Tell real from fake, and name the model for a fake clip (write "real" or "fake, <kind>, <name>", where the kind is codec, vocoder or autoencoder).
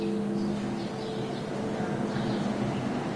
real